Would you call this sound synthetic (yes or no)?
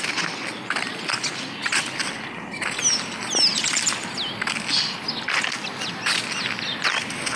no